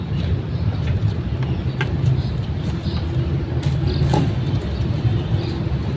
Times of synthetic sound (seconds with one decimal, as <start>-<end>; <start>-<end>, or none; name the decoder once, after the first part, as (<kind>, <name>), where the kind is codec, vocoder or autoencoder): none